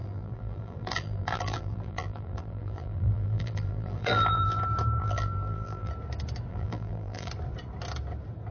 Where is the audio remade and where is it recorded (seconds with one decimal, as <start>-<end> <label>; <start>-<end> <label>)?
0.0-4.6 remade; 4.6-5.0 recorded; 5.0-5.9 remade; 5.9-6.5 recorded; 6.5-7.3 remade; 7.3-8.5 recorded